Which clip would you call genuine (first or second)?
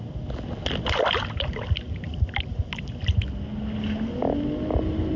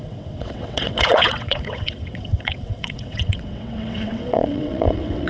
first